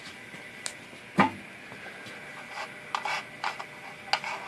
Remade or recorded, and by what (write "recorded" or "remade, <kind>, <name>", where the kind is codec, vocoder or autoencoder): recorded